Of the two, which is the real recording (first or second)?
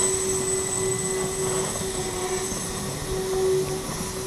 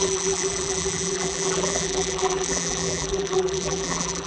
first